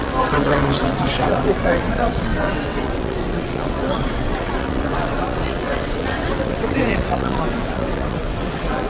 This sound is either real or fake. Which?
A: fake